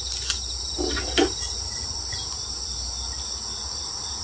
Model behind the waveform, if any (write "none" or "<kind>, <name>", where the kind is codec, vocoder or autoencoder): none